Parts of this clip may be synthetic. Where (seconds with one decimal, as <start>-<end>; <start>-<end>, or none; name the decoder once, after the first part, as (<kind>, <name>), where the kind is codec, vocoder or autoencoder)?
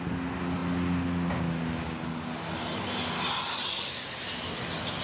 none